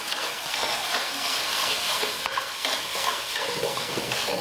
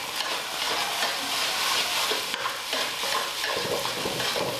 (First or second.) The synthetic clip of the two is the first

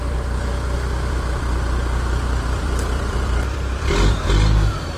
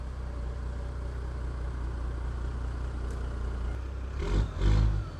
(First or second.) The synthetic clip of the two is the first